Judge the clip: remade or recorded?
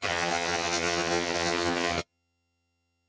remade